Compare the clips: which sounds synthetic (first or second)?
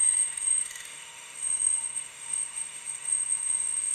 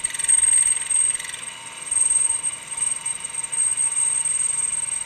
first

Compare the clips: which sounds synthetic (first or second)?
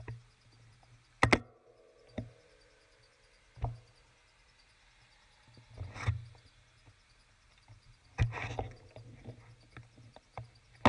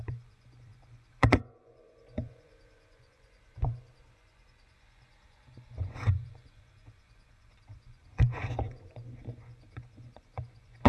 second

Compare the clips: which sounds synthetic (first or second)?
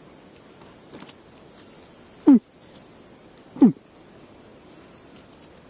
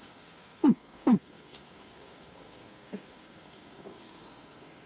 second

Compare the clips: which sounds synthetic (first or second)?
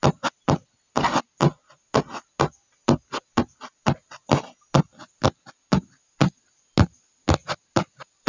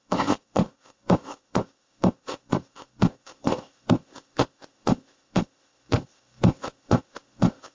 second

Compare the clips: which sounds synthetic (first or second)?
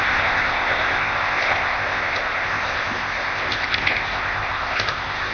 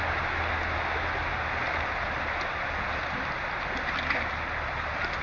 first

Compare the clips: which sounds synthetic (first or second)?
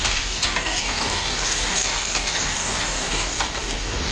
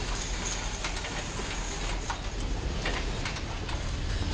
first